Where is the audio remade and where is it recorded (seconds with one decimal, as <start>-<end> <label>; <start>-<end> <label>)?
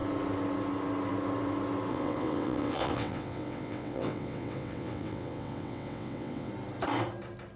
0.0-1.9 recorded; 1.9-6.5 remade; 6.5-7.6 recorded